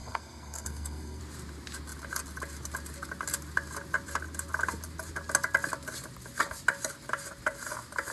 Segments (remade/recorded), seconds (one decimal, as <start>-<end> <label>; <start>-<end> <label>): 0.0-1.2 remade; 1.2-8.1 recorded